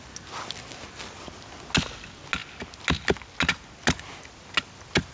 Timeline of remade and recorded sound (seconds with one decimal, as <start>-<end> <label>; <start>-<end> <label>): 0.0-5.1 recorded